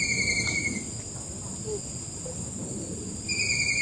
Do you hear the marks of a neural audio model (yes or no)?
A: no